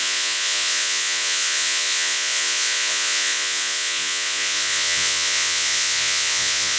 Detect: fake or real fake